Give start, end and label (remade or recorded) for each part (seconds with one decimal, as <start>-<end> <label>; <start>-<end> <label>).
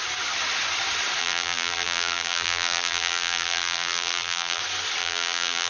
0.0-1.2 recorded; 1.2-4.6 remade; 4.6-5.0 recorded; 5.0-5.7 remade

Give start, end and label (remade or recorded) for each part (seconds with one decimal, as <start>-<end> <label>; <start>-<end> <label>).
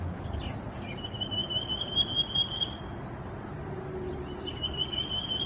0.0-4.5 recorded; 4.5-5.5 remade